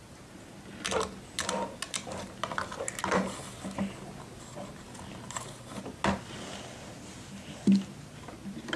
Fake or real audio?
real